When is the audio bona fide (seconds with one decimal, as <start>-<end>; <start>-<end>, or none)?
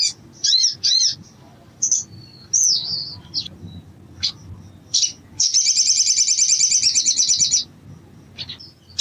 0.0-9.0